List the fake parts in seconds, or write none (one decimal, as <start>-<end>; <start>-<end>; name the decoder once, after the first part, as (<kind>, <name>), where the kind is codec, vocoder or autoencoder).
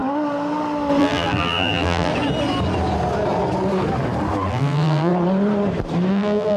1.0-2.1 (vocoder, BigVGAN v2); 4.5-5.1; 6.1-6.6